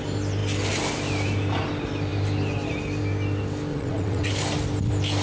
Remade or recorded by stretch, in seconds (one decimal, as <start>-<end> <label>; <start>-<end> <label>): 0.0-3.7 recorded; 3.7-4.3 remade; 4.3-5.2 recorded